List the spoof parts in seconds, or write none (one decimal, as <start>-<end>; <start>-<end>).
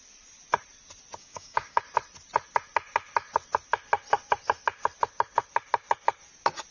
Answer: 1.2-1.8